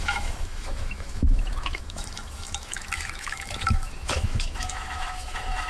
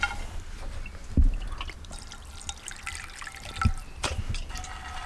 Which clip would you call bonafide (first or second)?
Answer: second